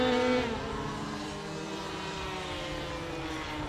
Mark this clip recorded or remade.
recorded